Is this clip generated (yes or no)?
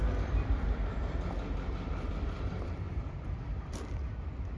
yes